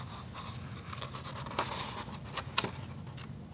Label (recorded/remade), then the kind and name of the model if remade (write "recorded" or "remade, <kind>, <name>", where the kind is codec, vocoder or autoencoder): recorded